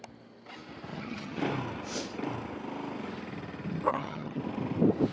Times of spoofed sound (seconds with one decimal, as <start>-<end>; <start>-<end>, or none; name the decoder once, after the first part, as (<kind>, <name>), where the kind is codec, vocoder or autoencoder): 0.9-1.4 (vocoder, HiFi-GAN); 3.9-4.4